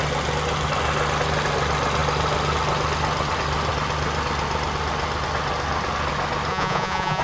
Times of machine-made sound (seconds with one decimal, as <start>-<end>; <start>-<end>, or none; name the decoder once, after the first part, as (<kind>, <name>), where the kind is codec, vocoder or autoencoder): 6.5-7.2 (vocoder, Vocos)